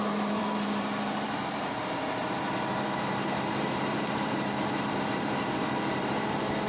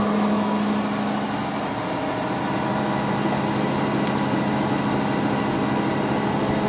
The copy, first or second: first